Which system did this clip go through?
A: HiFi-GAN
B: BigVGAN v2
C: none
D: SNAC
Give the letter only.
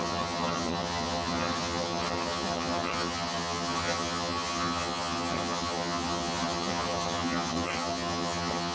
A